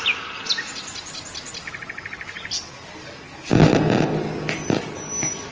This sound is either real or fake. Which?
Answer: real